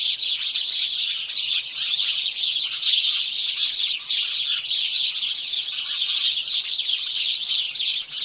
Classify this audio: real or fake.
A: fake